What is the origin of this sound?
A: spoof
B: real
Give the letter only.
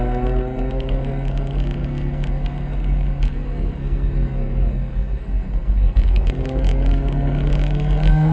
A